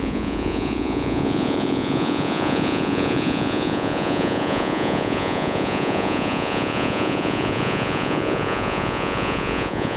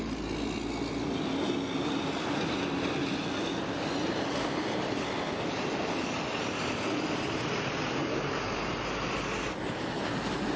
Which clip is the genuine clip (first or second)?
second